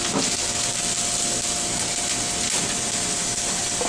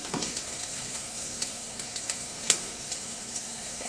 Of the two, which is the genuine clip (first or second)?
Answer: first